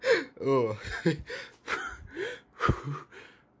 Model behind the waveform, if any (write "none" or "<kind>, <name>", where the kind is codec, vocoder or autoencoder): none